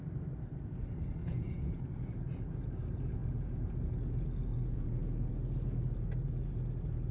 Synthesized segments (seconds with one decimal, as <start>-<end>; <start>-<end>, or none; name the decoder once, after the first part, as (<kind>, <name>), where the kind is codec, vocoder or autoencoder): 1.2-1.8 (vocoder, Vocos); 3.2-3.8; 4.5-5.3